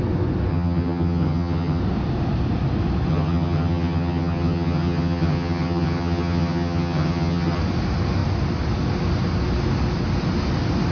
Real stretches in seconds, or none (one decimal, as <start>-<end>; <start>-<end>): 0.0-0.5; 1.8-3.1; 7.6-10.9